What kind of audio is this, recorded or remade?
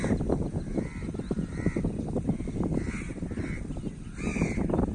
recorded